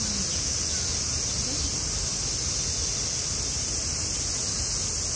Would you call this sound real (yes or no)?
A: yes